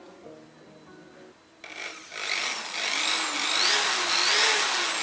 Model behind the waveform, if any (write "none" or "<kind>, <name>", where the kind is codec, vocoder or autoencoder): none